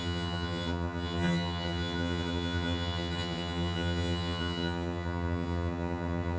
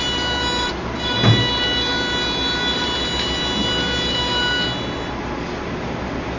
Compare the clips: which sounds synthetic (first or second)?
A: first